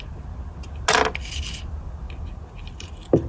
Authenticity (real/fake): real